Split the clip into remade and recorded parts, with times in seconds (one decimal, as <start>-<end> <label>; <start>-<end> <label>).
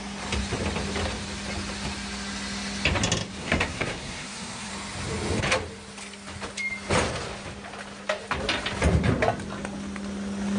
0.0-3.4 recorded; 3.4-4.7 remade; 4.7-10.6 recorded